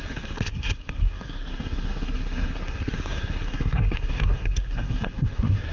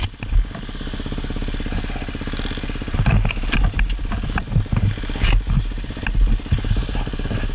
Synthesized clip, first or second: first